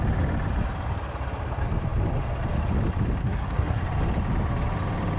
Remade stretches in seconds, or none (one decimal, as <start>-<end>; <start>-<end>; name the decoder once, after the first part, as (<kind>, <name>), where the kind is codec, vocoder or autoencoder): 3.2-3.8 (codec, SNAC)